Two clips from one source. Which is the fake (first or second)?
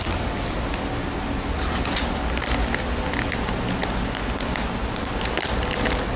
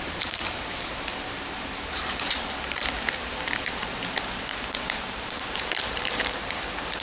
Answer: second